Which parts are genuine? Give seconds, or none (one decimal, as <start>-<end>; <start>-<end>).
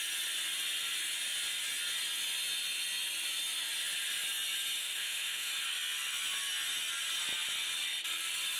0.0-4.8; 5.5-8.6